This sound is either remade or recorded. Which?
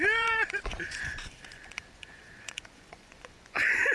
remade